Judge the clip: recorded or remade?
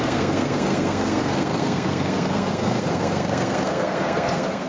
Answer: remade